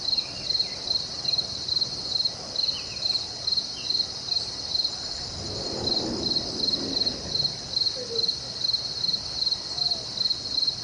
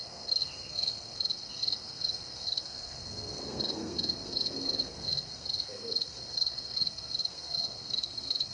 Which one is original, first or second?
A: first